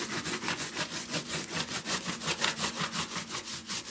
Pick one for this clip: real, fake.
fake